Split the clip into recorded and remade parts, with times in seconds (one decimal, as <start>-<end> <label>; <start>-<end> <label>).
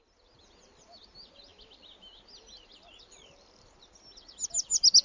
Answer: 0.0-5.0 recorded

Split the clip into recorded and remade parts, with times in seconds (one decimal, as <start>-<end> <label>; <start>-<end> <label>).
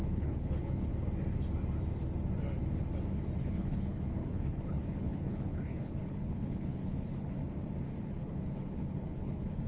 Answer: 0.0-0.9 remade; 0.9-3.4 recorded; 3.4-7.4 remade; 7.4-8.0 recorded; 8.0-9.7 remade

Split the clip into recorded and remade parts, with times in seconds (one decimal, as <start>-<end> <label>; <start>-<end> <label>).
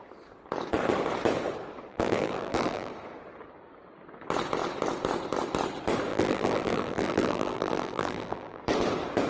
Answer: 0.0-1.9 recorded; 1.9-2.9 remade; 2.9-6.1 recorded; 6.1-8.6 remade; 8.6-9.3 recorded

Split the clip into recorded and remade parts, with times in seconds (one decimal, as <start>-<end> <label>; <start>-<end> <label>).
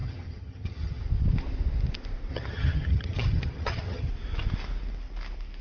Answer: 0.0-1.0 remade; 1.0-2.3 recorded; 2.3-4.1 remade; 4.1-5.6 recorded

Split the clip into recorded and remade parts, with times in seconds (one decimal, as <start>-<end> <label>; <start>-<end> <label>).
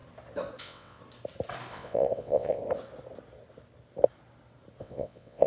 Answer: 0.0-0.6 recorded; 0.6-1.0 remade; 1.0-1.7 recorded; 1.7-2.6 remade; 2.6-4.8 recorded; 4.8-5.5 remade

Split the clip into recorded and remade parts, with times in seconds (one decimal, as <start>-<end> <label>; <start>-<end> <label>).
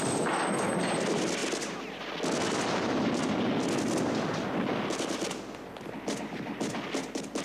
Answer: 0.0-7.4 recorded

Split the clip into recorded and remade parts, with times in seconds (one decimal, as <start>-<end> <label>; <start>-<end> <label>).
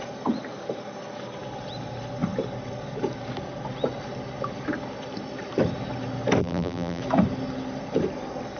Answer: 0.0-6.4 recorded; 6.4-7.0 remade; 7.0-8.6 recorded